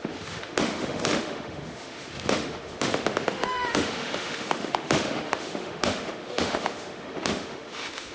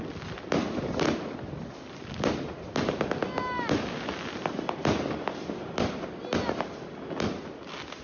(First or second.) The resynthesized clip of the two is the first